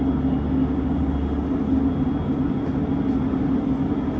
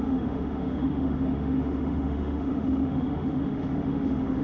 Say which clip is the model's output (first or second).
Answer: second